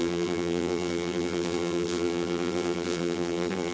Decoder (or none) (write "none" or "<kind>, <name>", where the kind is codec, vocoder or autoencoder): vocoder, BigVGAN v2